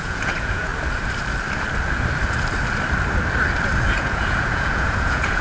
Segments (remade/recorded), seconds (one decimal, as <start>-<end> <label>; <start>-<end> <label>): 0.0-0.7 remade; 0.7-3.9 recorded; 3.9-5.4 remade